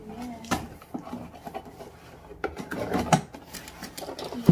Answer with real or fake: real